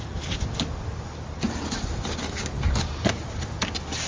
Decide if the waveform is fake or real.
real